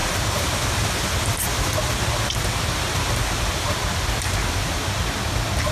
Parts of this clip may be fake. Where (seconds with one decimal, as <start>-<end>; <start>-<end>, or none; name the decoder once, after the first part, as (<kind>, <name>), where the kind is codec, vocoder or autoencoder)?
none